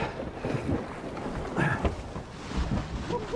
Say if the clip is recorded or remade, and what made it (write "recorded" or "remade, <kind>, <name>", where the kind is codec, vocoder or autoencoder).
recorded